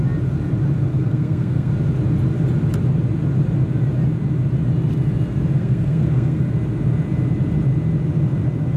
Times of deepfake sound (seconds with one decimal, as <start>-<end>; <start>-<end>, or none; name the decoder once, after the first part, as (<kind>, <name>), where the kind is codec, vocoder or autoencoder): 0.9-1.7 (codec, SNAC); 5.6-6.4